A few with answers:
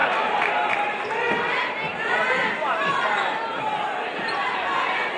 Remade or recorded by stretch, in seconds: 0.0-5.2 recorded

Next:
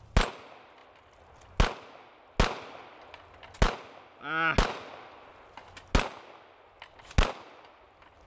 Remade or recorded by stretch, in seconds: 0.0-8.3 recorded